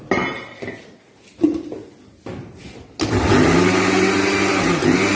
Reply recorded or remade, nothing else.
recorded